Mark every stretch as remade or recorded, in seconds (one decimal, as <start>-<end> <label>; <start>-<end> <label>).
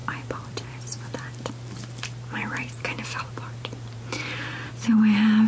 0.0-1.5 remade; 1.5-2.4 recorded; 2.4-4.7 remade; 4.7-5.5 recorded